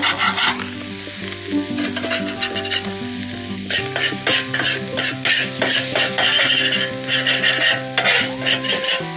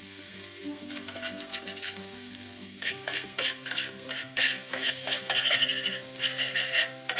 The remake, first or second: second